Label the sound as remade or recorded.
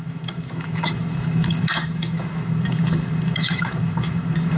remade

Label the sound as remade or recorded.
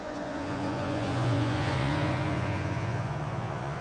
remade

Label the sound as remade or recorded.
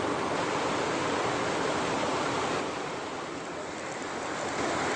remade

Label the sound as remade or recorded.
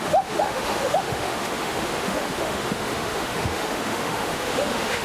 remade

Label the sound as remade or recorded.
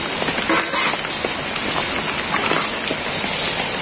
recorded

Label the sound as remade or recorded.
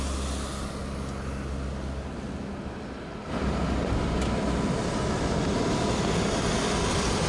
recorded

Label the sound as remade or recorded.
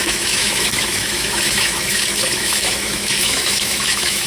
remade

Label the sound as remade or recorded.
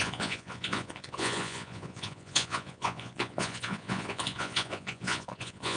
remade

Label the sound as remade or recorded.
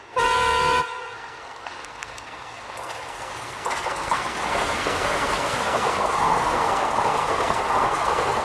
remade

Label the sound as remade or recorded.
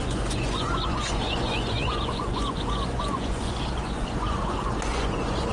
remade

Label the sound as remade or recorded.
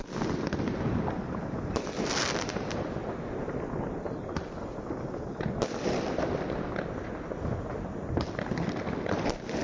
recorded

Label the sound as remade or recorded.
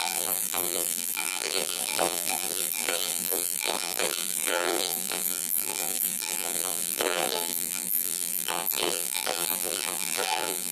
remade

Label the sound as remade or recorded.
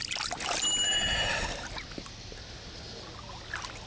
recorded